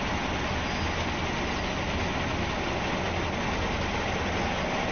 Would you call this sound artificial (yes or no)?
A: no